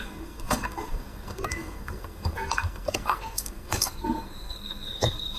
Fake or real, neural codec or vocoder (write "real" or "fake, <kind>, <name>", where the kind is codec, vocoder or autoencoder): fake, codec, SNAC